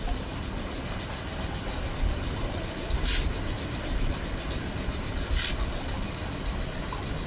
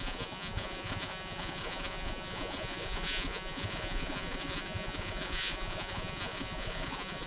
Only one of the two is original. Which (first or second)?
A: first